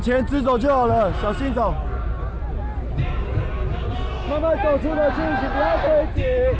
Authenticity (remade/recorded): recorded